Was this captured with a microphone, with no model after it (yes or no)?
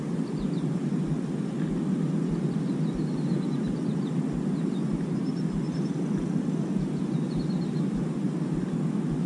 yes